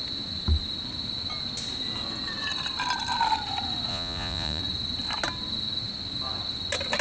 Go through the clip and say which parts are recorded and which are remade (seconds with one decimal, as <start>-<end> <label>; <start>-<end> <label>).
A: 0.0-3.9 recorded; 3.9-4.6 remade; 4.6-7.0 recorded